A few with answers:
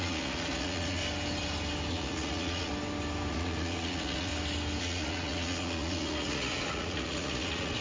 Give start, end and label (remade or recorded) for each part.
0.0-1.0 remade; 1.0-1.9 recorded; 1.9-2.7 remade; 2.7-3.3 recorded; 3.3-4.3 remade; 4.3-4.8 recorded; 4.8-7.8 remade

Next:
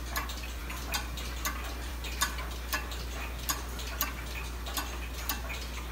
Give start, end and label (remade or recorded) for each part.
0.0-5.9 recorded

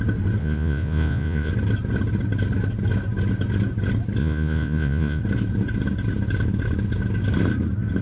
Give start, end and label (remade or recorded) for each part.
0.0-0.4 recorded; 0.4-1.5 remade; 1.5-4.2 recorded; 4.2-5.2 remade; 5.2-8.0 recorded

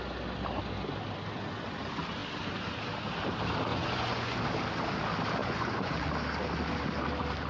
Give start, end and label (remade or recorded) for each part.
0.0-3.7 recorded; 3.7-4.4 remade; 4.4-5.4 recorded; 5.4-6.1 remade; 6.1-7.5 recorded

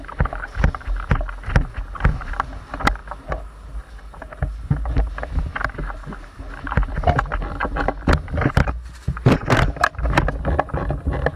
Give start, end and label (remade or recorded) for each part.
0.0-11.4 recorded

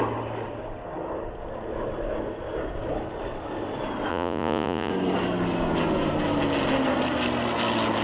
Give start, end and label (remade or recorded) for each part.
0.0-4.1 recorded; 4.1-4.9 remade; 4.9-8.0 recorded

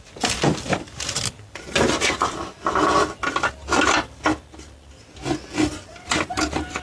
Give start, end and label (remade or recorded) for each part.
0.0-6.8 recorded